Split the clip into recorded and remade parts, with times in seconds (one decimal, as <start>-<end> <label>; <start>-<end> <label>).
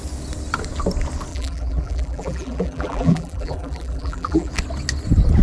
0.0-1.3 recorded; 1.3-4.5 remade; 4.5-5.4 recorded